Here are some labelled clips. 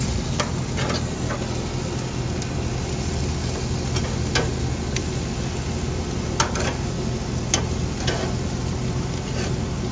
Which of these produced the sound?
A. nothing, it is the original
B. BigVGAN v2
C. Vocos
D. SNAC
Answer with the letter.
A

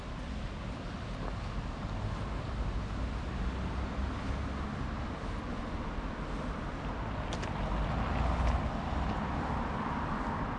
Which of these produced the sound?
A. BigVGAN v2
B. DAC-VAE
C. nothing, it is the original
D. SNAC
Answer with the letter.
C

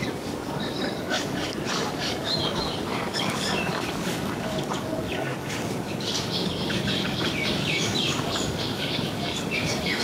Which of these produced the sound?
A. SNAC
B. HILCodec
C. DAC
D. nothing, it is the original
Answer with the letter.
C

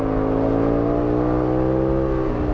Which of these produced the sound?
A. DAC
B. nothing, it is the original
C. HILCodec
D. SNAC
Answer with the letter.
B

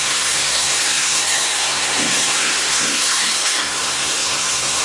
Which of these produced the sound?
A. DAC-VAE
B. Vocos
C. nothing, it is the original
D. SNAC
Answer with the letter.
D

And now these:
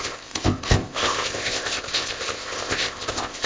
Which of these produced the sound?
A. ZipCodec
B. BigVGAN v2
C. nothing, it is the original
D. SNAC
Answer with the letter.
A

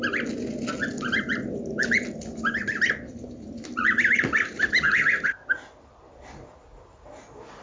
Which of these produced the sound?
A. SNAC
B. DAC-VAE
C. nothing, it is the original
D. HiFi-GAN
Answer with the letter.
C